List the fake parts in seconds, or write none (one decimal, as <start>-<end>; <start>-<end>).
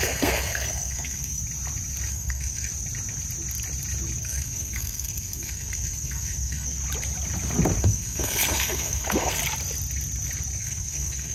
0.0-1.4; 2.1-2.7; 4.2-6.8; 7.8-9.4; 10.6-11.3